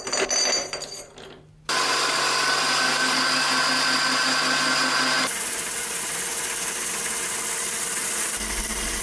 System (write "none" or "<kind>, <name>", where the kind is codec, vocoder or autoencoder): none